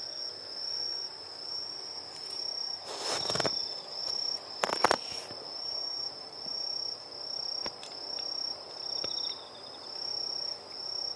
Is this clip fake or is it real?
real